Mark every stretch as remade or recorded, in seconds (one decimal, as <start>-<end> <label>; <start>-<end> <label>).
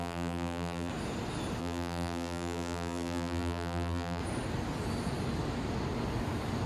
0.0-0.9 remade; 0.9-1.6 recorded; 1.6-4.2 remade; 4.2-6.7 recorded